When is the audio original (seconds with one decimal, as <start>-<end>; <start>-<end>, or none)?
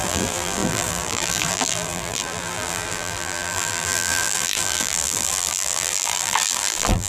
none